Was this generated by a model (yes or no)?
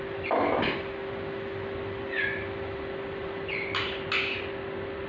no